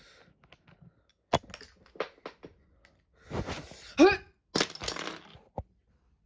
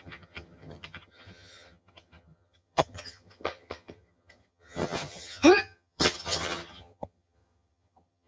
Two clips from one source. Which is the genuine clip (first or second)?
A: first